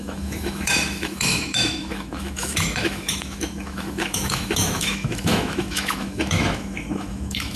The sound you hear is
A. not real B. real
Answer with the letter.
A